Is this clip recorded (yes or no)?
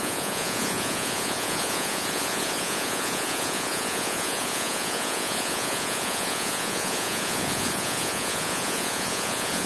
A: no